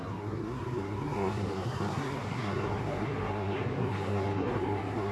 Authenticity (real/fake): fake